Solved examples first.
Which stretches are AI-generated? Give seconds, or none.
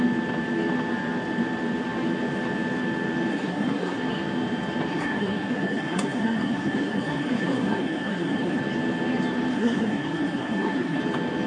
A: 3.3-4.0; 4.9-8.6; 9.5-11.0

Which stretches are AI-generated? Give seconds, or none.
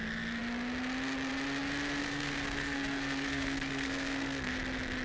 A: 2.0-4.5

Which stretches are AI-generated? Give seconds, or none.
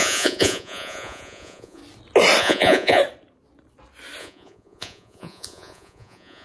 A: 0.0-1.8; 2.4-3.0; 4.2-6.4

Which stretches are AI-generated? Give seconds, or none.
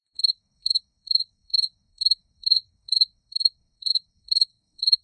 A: 0.0-5.0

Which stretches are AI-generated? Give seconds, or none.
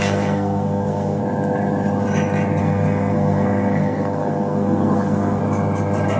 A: 0.0-1.2; 2.6-5.4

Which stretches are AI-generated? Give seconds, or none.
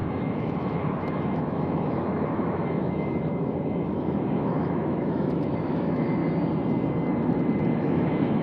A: 0.0-6.2; 7.8-8.4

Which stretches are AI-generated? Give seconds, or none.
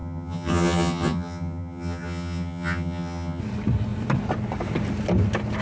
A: 0.0-3.4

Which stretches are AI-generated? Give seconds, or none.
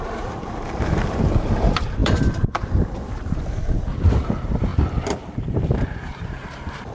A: 0.0-4.7; 5.5-6.9